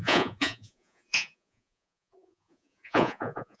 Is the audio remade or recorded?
remade